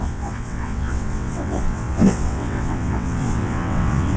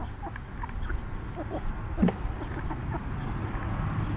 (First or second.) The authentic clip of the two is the second